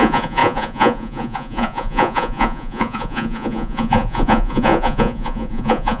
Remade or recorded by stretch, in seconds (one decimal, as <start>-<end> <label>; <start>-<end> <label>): 0.0-6.0 remade